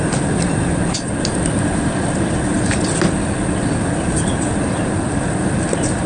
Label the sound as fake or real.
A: real